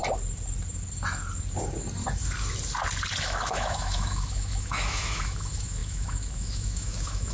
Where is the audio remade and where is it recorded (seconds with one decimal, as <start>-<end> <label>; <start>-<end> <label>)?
0.0-3.2 recorded; 3.2-7.3 remade